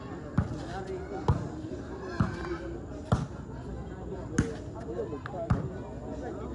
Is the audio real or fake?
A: real